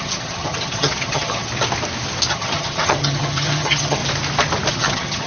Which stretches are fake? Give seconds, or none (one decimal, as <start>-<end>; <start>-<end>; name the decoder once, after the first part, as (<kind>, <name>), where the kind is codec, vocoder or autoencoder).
0.0-1.5 (vocoder, HiFi-GAN); 2.3-4.0; 4.7-5.3